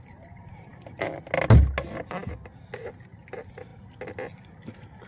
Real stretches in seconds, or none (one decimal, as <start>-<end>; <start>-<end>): 0.0-5.1

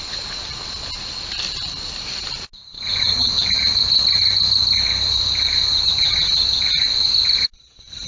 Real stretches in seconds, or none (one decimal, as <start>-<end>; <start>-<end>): 0.0-8.1

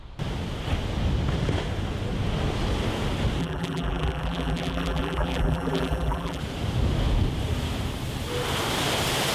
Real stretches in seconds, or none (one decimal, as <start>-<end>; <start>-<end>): 0.0-3.4; 6.4-9.3

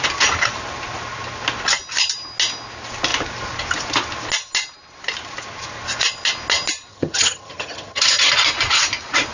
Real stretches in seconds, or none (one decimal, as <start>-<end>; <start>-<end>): 0.0-6.9; 8.3-9.3

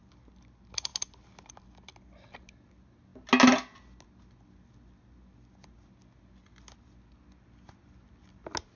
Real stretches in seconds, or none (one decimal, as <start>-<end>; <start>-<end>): 0.0-8.8